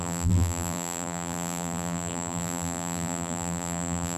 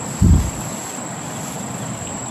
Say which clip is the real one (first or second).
second